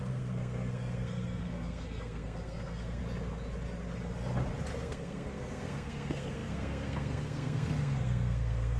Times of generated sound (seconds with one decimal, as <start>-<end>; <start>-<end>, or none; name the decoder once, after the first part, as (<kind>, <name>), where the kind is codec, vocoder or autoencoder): 0.0-3.0 (codec, SNAC); 4.8-8.8